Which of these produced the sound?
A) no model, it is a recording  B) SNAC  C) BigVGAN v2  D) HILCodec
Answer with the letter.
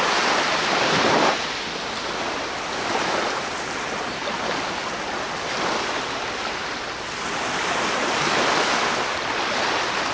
A